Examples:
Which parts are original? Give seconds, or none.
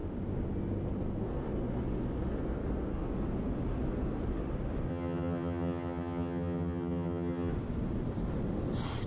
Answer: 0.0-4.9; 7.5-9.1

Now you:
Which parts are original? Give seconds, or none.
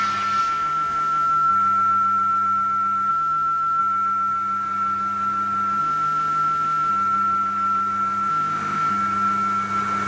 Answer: 0.0-0.4; 1.5-3.1; 3.8-5.8; 6.9-8.3; 8.9-10.1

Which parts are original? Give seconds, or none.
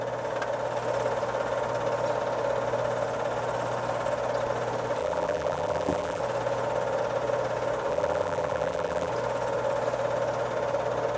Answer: 0.0-5.0; 6.2-7.9; 9.1-11.2